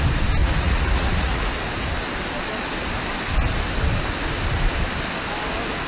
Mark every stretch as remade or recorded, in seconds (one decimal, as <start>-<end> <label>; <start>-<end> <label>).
0.0-0.4 recorded; 0.4-1.5 remade; 1.5-5.9 recorded

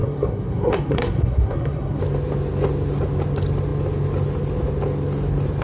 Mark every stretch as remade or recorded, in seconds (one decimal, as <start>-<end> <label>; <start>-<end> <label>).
0.0-2.0 remade; 2.0-5.6 recorded

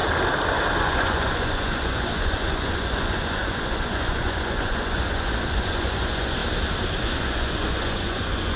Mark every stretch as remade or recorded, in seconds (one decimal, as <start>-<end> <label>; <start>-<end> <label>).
0.0-0.8 recorded; 0.8-6.4 remade; 6.4-7.0 recorded; 7.0-8.6 remade

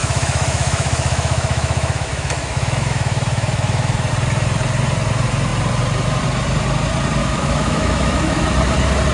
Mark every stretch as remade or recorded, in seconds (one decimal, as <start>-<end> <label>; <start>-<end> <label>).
0.0-4.1 remade; 4.1-7.2 recorded; 7.2-8.4 remade; 8.4-9.1 recorded

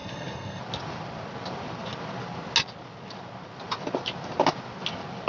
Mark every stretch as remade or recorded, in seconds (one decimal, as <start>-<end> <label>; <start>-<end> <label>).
0.0-0.6 remade; 0.6-5.3 recorded